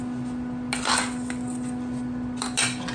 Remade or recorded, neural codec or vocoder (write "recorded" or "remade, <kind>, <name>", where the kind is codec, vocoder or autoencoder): recorded